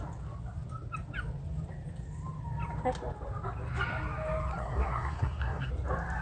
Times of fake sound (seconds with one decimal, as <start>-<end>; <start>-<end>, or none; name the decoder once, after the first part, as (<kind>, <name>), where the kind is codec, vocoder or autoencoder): 4.5-5.7 (codec, SNAC)